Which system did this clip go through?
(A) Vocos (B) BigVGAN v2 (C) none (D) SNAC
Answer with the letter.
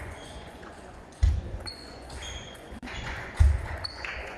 A